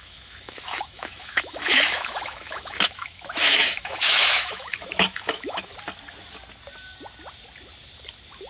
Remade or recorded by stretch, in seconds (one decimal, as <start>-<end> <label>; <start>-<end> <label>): 0.0-5.7 remade; 5.7-8.5 recorded